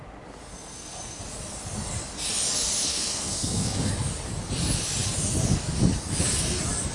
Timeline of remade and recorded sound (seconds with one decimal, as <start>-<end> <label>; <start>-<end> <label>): 0.0-0.5 recorded; 0.5-1.2 remade; 1.2-2.9 recorded; 2.9-3.9 remade; 3.9-6.9 recorded